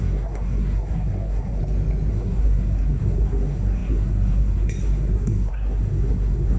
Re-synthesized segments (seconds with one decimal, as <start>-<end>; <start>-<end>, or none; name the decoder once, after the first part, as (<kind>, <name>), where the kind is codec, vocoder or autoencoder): 0.0-1.6 (codec, SNAC); 2.1-6.6

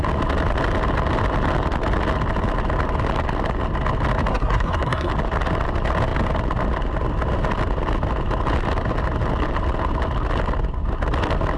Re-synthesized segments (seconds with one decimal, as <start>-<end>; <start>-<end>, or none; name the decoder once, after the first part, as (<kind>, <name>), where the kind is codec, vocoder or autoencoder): 4.3-5.1 (codec, SNAC)